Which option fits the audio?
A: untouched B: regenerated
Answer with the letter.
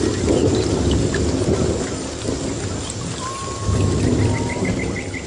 A